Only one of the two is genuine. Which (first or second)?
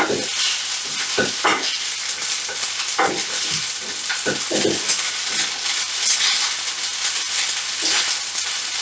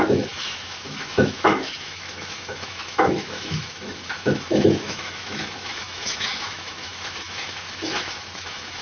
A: first